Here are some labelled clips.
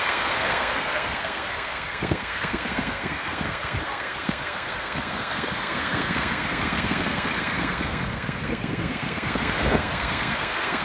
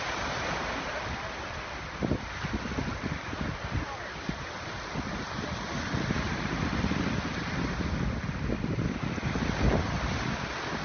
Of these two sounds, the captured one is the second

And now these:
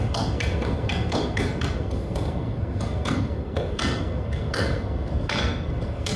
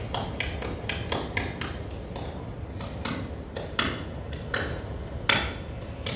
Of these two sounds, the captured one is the second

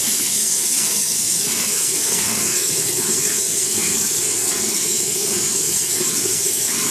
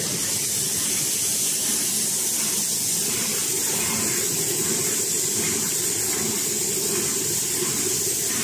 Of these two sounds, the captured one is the second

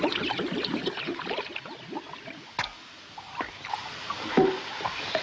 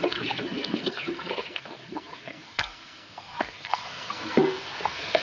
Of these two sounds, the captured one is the first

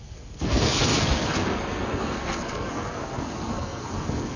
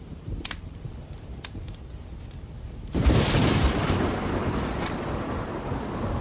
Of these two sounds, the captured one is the second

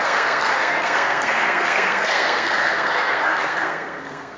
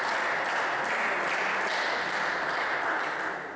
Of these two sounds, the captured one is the second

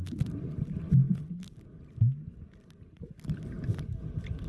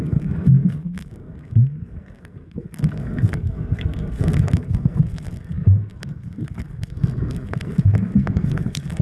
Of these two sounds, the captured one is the first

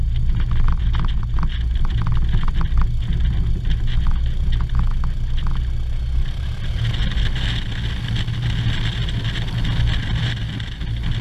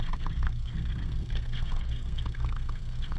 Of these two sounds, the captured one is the first